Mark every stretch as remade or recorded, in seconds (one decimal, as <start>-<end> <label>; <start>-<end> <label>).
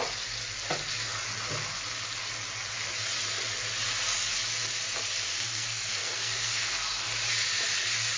0.0-5.3 recorded; 5.3-7.0 remade; 7.0-8.2 recorded